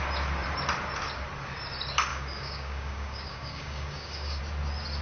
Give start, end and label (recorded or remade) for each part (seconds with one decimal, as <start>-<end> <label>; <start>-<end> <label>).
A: 0.0-2.1 recorded; 2.1-4.4 remade; 4.4-5.0 recorded